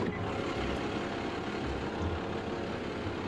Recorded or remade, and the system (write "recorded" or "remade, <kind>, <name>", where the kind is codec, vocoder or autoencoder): recorded